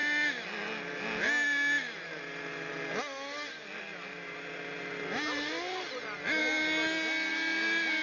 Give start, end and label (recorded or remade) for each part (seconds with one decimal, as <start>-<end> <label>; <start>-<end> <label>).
0.0-8.0 recorded